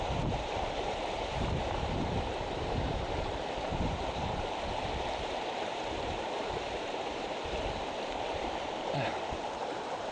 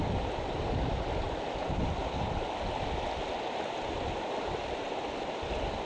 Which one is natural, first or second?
second